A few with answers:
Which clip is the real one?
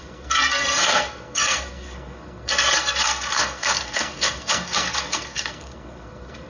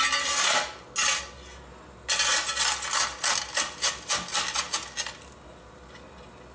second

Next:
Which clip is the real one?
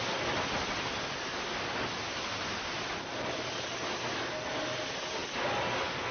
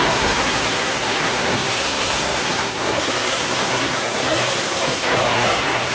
first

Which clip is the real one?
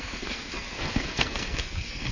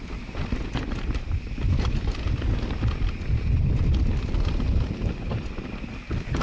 second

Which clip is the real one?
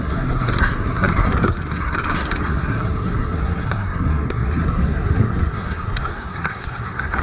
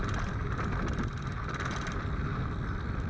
second